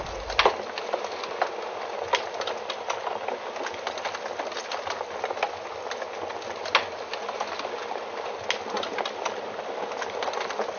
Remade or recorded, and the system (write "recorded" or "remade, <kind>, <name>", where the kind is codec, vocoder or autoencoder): recorded